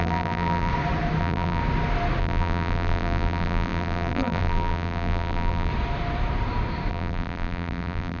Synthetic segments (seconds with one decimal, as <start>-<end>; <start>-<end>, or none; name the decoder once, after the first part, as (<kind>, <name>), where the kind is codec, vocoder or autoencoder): 0.0-0.7 (vocoder, BigVGAN v2); 1.2-1.6; 2.2-5.7; 6.9-8.2